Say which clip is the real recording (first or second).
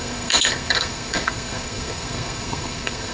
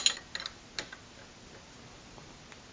second